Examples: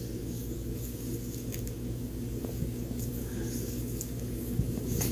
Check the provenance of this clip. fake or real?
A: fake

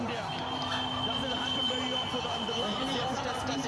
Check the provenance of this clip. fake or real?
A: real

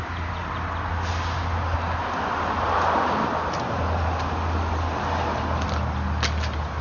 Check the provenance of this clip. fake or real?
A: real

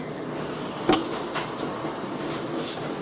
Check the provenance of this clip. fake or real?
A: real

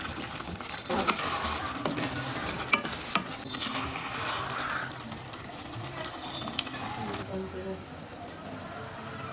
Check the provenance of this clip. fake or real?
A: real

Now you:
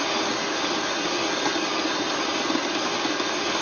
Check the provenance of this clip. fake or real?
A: real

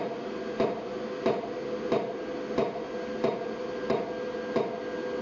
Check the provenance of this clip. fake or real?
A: real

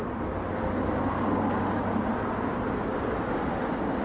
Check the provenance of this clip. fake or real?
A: real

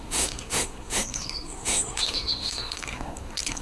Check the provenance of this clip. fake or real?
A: fake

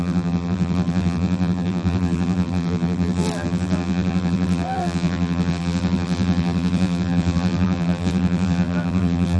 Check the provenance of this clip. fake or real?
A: fake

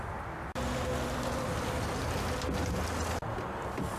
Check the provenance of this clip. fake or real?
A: real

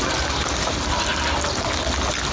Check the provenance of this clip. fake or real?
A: real